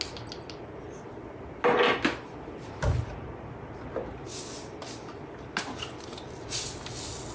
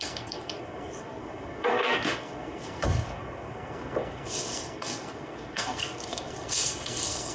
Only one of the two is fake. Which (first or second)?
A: second